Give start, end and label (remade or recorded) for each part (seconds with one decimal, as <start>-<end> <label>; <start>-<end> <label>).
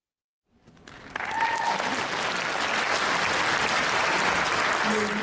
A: 0.0-3.8 recorded; 3.8-4.5 remade; 4.5-5.2 recorded